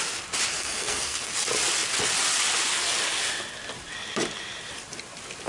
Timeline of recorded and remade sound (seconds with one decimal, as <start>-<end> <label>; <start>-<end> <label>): 0.0-0.5 recorded; 0.5-1.3 remade; 1.3-5.5 recorded